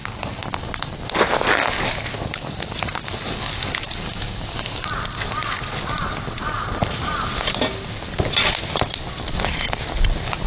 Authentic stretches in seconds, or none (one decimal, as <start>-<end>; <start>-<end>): 0.7-1.6; 4.9-10.5